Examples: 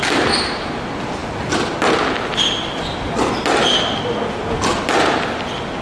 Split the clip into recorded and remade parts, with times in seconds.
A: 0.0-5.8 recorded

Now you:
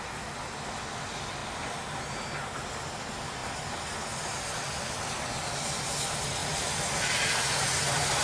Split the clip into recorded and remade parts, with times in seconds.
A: 0.0-8.2 recorded

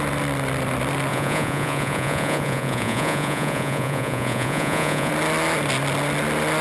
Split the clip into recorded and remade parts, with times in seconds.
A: 0.0-1.1 recorded; 1.1-5.1 remade; 5.1-6.6 recorded